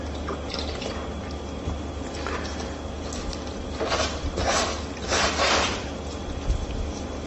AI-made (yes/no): no